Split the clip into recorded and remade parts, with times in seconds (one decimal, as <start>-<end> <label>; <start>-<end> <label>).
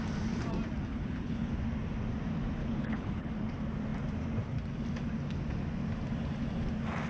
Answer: 0.0-0.9 recorded; 0.9-1.5 remade; 1.5-2.6 recorded; 2.6-3.3 remade; 3.3-7.1 recorded